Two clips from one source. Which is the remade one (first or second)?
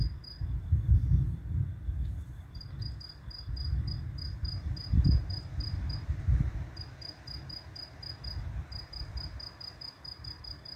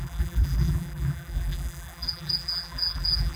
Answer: second